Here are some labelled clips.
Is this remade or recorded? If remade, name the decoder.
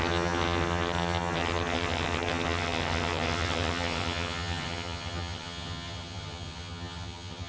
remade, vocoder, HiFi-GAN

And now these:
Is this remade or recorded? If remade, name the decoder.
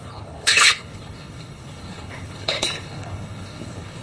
remade, codec, HILCodec